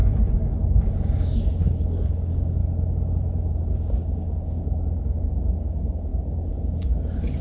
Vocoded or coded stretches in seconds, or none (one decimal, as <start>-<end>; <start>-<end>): 0.9-2.6; 3.5-7.4